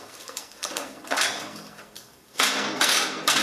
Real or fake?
fake